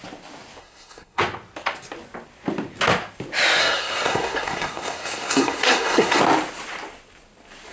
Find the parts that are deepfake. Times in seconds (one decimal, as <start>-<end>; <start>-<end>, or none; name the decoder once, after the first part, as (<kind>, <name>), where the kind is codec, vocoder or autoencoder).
0.6-1.2 (codec, SNAC); 3.6-6.2